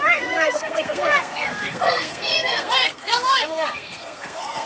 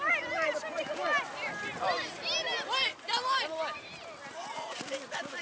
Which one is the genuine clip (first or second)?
second